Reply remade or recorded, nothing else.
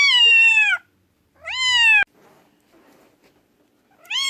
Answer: recorded